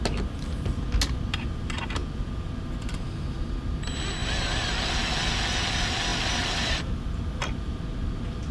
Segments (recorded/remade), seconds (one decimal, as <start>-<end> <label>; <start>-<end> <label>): 0.0-4.2 recorded; 4.2-4.8 remade; 4.8-6.1 recorded; 6.1-7.8 remade; 7.8-8.5 recorded